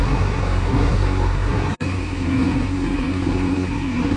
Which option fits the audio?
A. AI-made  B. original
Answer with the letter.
A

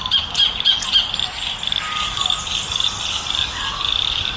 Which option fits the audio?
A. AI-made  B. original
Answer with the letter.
B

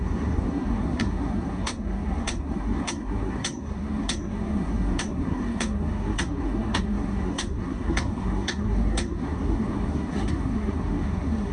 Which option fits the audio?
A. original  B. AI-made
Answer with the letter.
B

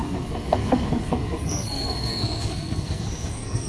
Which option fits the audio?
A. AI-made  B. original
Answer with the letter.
A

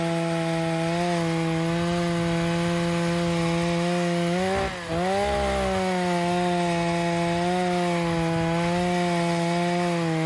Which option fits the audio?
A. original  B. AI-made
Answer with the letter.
A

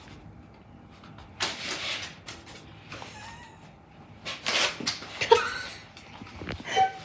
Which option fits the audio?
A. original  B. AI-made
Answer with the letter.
A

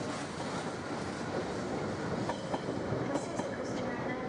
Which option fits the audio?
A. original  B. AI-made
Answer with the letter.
A